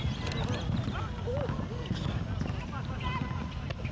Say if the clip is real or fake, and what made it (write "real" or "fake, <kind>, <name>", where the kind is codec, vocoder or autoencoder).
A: real